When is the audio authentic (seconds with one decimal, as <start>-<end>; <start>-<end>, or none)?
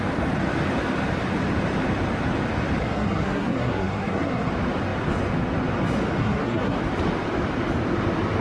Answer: 0.0-2.8; 4.5-6.2; 6.8-8.4